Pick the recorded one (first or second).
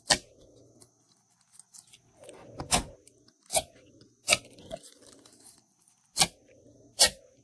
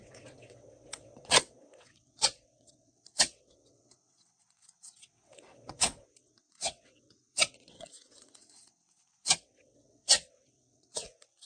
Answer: first